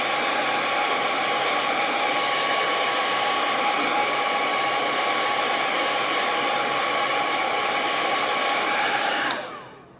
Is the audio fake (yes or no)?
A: no